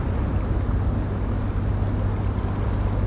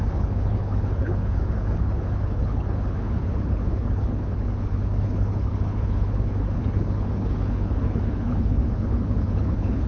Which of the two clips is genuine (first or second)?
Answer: first